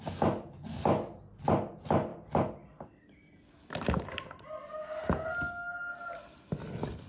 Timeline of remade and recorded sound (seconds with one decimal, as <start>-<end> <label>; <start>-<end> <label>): 0.0-7.1 recorded